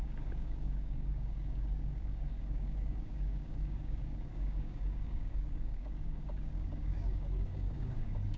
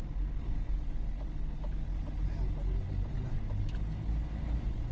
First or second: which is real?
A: second